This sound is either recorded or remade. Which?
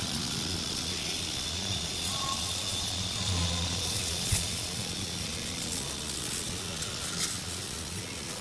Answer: remade